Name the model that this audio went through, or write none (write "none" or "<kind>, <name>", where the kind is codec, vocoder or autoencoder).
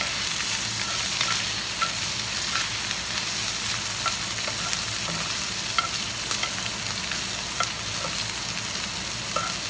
none